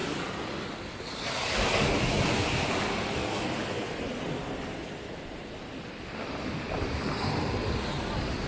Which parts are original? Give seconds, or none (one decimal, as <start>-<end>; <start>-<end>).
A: 0.0-4.8; 7.9-8.5